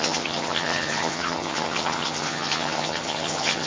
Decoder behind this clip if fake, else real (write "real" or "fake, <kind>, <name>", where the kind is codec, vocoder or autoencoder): fake, vocoder, HiFi-GAN